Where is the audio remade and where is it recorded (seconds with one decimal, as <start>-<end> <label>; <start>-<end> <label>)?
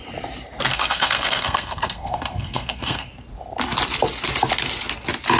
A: 0.0-0.7 recorded; 0.7-3.1 remade; 3.1-5.4 recorded